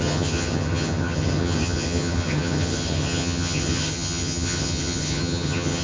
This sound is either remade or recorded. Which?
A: remade